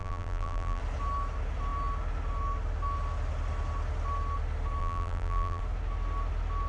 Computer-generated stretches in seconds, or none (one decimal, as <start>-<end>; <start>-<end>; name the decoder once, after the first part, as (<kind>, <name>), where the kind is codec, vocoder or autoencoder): 0.0-0.8 (vocoder, BigVGAN v2); 4.8-5.6